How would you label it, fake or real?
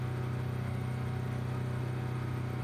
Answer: real